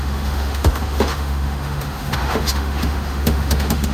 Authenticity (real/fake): fake